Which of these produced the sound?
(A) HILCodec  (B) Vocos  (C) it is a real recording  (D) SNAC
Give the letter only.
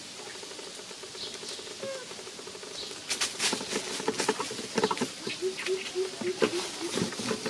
C